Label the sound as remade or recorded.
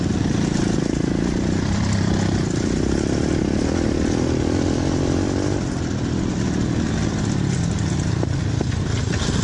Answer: recorded